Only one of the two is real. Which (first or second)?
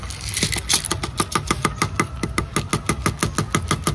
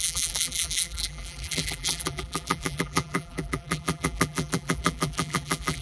first